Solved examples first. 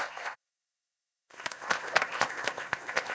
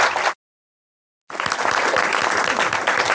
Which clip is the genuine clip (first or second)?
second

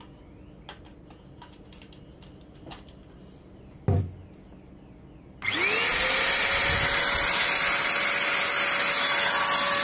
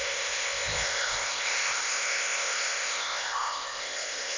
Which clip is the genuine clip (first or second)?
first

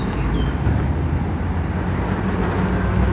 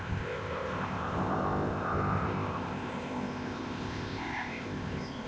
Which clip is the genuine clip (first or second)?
first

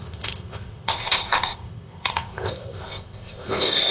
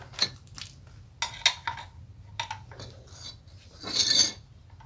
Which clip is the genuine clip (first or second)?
second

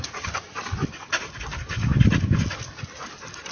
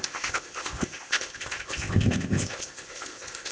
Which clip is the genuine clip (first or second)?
first